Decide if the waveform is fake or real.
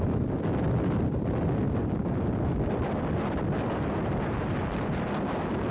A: real